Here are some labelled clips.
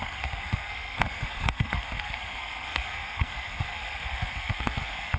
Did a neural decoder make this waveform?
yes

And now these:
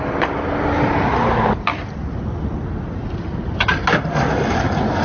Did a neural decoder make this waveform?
no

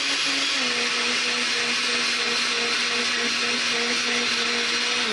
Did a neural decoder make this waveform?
no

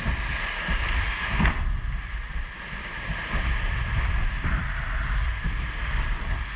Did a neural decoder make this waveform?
no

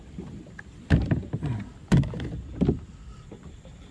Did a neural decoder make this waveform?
no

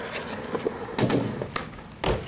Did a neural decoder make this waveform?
no